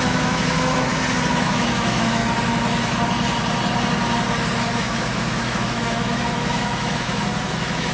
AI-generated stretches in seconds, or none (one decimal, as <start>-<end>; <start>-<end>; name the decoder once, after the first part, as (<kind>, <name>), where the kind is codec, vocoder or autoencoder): 0.0-0.9 (autoencoder, DAC-VAE); 1.4-2.2; 4.8-7.9